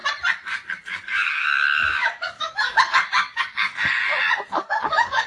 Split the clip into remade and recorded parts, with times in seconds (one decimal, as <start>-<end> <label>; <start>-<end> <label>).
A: 0.0-0.9 recorded; 0.9-4.0 remade; 4.0-4.5 recorded; 4.5-5.3 remade